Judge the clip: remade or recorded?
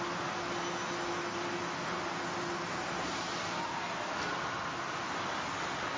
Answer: recorded